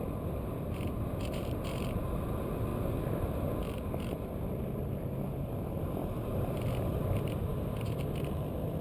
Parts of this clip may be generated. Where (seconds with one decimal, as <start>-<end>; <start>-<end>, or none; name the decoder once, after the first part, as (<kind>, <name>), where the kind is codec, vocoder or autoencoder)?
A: none